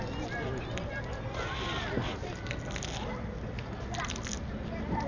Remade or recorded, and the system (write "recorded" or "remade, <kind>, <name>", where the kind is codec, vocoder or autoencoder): recorded